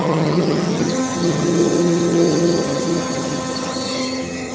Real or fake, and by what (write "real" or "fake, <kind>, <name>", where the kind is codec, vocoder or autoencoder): fake, vocoder, HiFi-GAN